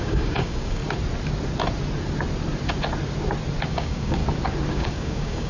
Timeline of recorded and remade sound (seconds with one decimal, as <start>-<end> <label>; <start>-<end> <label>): 0.0-0.8 remade; 0.8-3.7 recorded; 3.7-4.2 remade; 4.2-4.7 recorded; 4.7-5.5 remade